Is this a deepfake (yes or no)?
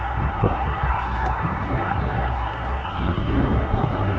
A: yes